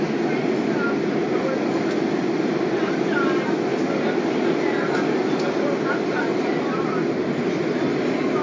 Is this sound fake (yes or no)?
no